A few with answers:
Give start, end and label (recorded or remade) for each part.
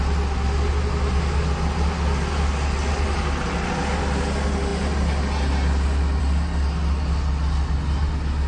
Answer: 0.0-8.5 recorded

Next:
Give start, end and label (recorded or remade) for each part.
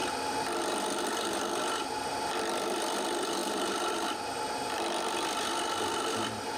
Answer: 0.0-6.6 remade